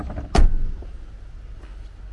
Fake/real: real